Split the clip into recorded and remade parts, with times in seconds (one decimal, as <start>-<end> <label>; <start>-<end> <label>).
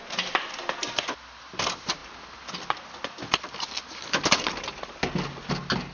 0.0-5.9 recorded